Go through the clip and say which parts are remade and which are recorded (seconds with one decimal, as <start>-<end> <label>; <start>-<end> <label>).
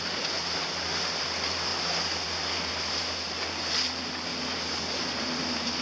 0.0-5.8 recorded